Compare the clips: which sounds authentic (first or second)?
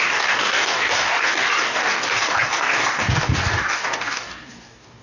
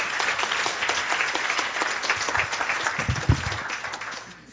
second